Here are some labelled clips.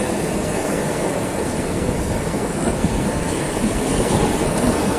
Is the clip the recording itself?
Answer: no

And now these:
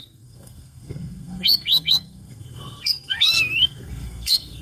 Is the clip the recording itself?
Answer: no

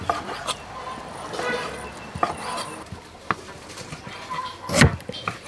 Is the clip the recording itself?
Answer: yes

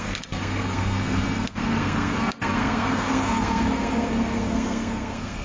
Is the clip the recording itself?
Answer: no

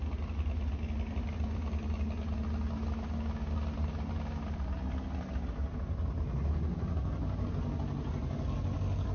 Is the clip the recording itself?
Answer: yes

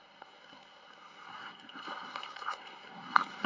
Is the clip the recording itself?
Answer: no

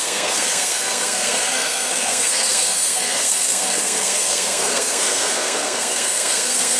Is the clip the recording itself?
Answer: no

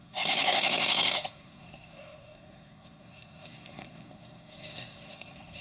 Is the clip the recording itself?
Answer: no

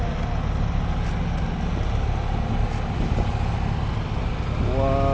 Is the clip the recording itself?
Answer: yes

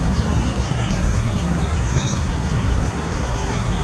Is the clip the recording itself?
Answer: no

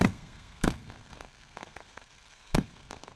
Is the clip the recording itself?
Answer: no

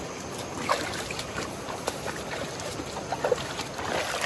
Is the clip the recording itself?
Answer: yes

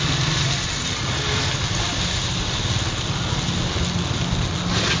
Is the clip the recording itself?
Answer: yes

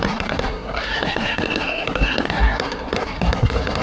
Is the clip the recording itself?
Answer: no